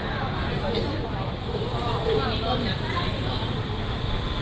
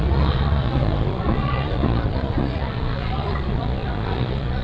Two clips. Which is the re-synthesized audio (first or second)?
second